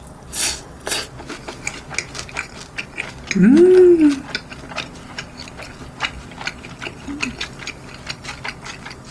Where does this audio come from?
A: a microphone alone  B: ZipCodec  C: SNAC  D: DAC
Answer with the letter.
A